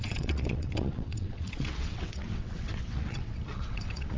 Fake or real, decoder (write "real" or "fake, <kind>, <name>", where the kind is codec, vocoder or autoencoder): fake, vocoder, WaveNeXt